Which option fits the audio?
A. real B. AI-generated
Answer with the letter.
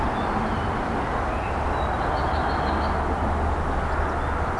A